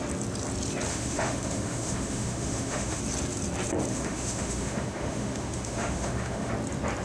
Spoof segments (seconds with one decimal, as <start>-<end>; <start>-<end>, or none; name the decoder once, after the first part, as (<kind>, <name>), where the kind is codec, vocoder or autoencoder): 0.9-3.0 (autoencoder, DAC-VAE); 3.9-6.5